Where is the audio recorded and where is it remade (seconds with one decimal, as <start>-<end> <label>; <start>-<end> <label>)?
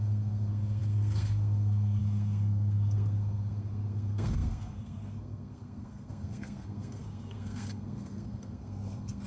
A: 0.0-9.3 remade